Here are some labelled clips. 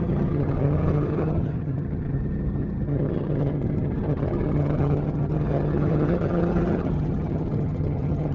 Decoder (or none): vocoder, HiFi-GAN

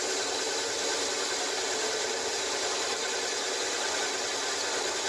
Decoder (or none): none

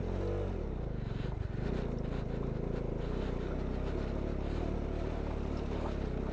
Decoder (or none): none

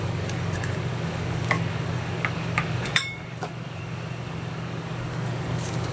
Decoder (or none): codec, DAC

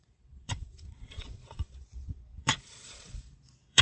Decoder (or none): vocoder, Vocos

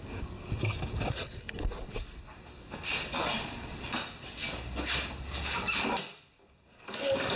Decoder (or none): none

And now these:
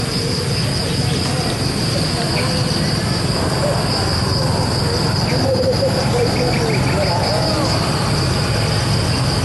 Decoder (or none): none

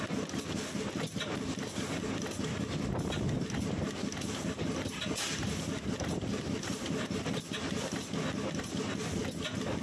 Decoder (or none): none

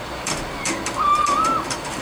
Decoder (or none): vocoder, BigVGAN v2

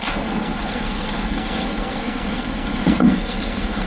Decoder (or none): codec, SNAC